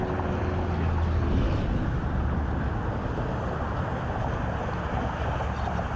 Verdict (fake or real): real